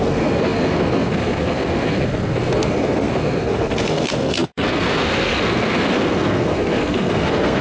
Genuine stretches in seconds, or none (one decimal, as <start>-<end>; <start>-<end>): none